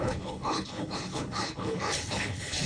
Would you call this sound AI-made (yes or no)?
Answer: yes